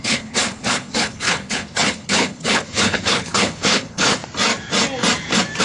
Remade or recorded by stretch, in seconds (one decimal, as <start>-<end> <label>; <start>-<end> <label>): 0.0-4.2 remade; 4.2-5.6 recorded

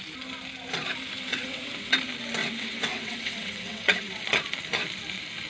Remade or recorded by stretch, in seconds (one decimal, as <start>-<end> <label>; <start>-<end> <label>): 0.0-1.3 recorded; 1.3-2.0 remade; 2.0-2.4 recorded; 2.4-4.2 remade; 4.2-5.5 recorded

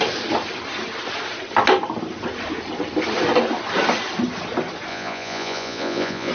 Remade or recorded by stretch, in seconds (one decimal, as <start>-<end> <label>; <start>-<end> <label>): 0.0-4.9 recorded; 4.9-6.3 remade

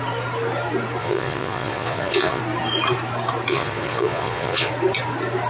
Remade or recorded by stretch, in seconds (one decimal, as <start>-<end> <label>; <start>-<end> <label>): 0.0-1.0 recorded; 1.0-2.4 remade; 2.4-3.5 recorded; 3.5-4.7 remade; 4.7-5.5 recorded